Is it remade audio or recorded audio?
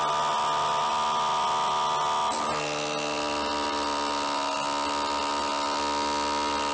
recorded